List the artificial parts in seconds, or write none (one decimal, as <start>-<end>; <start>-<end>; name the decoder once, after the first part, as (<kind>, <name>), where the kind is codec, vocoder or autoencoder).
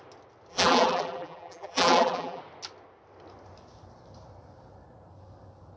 0.5-2.4 (vocoder, BigVGAN v2)